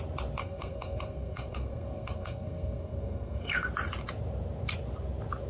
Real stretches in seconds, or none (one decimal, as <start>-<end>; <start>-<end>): 0.0-0.4; 3.7-5.5